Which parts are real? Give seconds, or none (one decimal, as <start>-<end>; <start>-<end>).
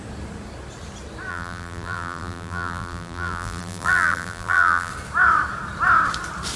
0.0-1.3; 4.9-6.6